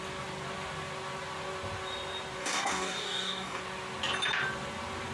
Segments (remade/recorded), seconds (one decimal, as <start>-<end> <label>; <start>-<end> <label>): 0.0-2.4 recorded; 2.4-3.6 remade; 3.6-5.1 recorded